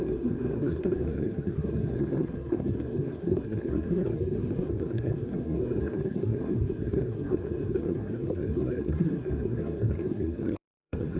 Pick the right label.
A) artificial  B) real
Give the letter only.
A